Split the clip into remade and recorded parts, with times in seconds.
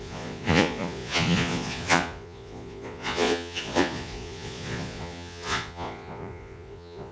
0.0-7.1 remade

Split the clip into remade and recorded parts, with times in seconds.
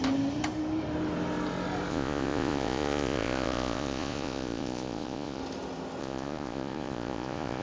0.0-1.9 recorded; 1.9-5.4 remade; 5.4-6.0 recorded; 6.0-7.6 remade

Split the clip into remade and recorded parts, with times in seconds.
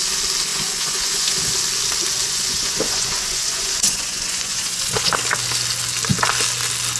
0.0-0.5 recorded; 0.5-1.4 remade; 1.4-2.2 recorded; 2.2-5.2 remade; 5.2-7.0 recorded